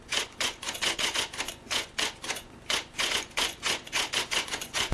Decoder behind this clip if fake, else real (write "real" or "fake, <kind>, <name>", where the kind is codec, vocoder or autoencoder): fake, vocoder, Vocos